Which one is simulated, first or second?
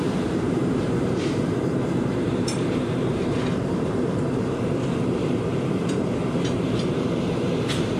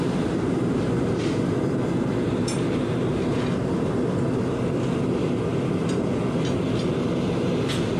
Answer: first